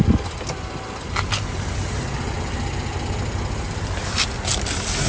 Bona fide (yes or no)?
yes